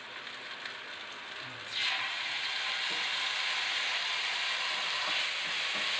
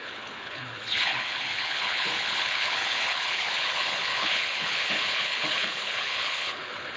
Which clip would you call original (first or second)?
first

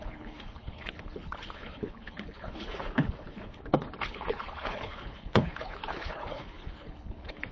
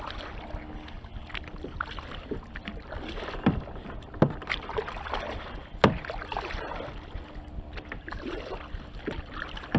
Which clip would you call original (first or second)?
second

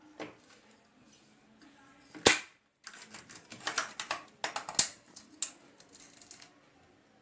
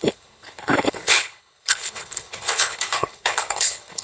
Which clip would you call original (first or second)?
first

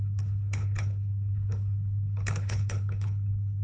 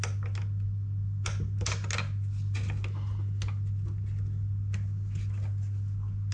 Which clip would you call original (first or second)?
second